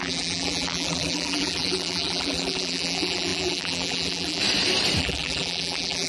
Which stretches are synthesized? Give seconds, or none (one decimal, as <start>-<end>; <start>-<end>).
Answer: 0.0-4.4; 5.0-6.1